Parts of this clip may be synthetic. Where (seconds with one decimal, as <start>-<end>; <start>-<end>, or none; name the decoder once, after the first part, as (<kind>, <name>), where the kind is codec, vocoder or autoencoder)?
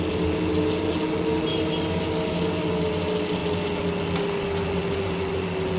none